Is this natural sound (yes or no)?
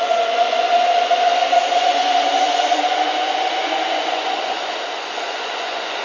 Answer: no